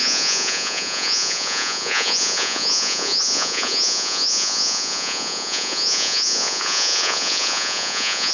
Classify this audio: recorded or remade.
remade